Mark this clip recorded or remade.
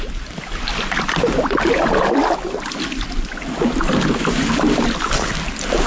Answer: recorded